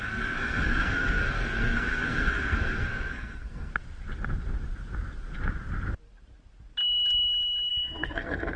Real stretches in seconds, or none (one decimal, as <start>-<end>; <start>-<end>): 3.7-7.7